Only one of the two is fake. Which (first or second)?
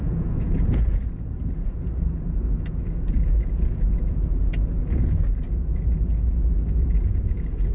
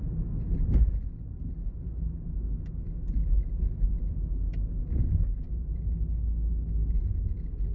first